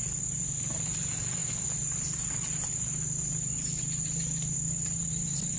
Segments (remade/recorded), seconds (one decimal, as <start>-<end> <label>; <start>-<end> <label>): 0.0-5.6 recorded